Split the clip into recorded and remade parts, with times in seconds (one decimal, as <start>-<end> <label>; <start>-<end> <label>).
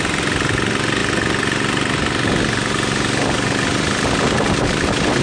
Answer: 0.0-5.2 recorded